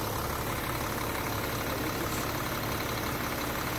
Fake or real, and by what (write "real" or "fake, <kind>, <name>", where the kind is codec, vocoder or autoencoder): real